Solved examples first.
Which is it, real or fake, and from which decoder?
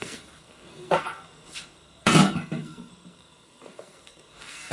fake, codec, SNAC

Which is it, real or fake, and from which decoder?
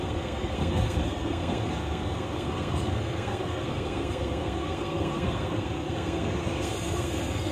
fake, codec, SNAC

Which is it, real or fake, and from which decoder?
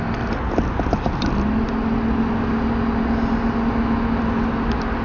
real